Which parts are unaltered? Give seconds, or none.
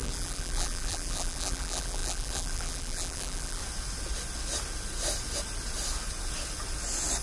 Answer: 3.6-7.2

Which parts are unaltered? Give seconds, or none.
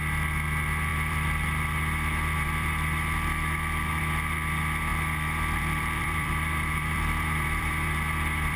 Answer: 0.0-0.9; 4.0-4.9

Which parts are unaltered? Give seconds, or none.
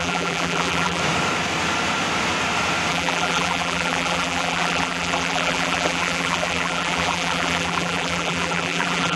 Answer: 1.0-2.9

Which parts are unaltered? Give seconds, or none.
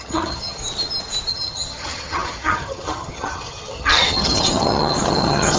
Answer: 0.6-1.3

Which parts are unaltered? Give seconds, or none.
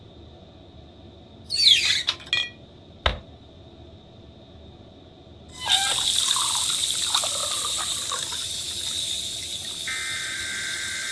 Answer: 0.0-7.4; 8.7-10.0